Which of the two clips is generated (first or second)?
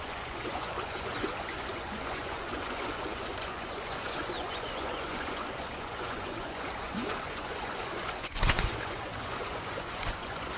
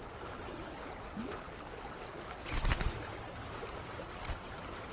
first